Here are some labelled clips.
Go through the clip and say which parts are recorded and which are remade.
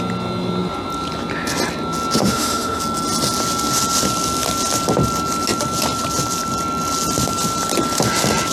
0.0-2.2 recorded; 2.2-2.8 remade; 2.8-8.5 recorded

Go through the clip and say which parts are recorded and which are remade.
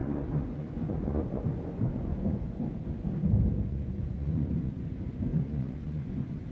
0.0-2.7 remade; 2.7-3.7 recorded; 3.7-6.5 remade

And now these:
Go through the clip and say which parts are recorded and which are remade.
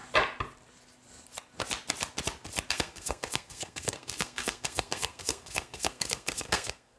0.0-2.7 recorded; 2.7-7.0 remade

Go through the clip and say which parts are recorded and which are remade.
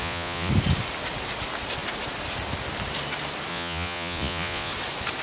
0.0-0.5 remade; 0.5-3.5 recorded; 3.5-4.7 remade; 4.7-5.2 recorded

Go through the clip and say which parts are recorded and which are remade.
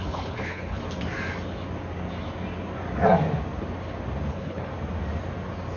0.0-0.8 remade; 0.8-4.3 recorded; 4.3-4.7 remade; 4.7-5.8 recorded